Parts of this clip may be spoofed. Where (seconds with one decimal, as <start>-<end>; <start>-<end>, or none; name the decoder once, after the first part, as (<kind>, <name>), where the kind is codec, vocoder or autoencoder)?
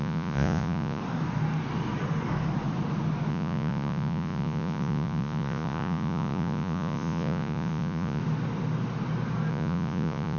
0.0-1.0 (vocoder, Vocos); 3.3-8.2; 9.5-10.4